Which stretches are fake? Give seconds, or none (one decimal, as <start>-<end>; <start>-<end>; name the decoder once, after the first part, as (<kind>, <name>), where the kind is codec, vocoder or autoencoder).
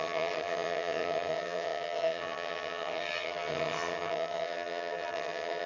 0.0-5.7 (vocoder, HiFi-GAN)